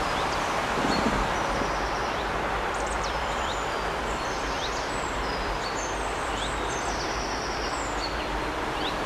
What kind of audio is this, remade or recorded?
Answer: remade